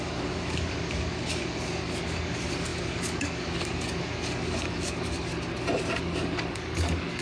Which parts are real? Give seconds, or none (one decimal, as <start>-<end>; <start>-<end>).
5.3-6.0